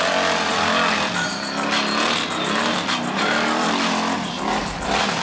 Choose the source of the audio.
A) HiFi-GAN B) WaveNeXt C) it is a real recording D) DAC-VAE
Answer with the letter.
C